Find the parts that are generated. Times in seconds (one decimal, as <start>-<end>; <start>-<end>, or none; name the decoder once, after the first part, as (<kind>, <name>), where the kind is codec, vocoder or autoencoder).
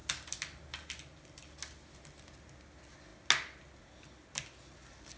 none